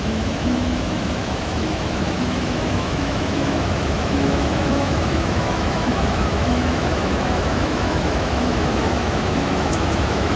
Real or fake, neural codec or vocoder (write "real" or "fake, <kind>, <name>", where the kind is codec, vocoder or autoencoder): fake, autoencoder, DAC-VAE